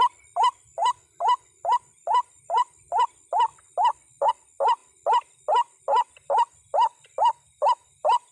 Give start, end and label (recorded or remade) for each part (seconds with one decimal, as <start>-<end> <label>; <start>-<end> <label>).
0.0-2.0 recorded; 2.0-2.6 remade; 2.6-8.3 recorded